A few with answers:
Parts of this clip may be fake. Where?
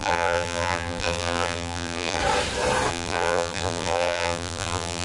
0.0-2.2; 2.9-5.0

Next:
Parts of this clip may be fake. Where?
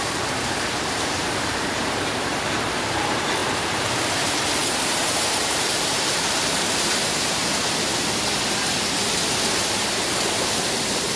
0.0-7.4; 9.6-11.2